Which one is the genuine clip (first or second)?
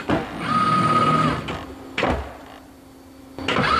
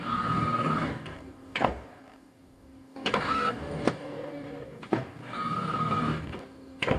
first